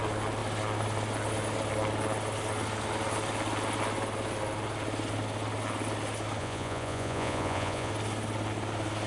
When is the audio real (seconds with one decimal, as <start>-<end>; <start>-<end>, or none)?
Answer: 0.0-6.4; 7.9-9.1